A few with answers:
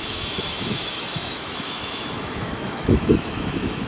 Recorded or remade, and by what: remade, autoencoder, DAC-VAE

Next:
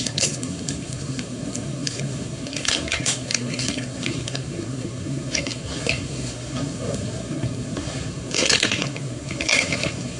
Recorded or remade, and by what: remade, codec, SNAC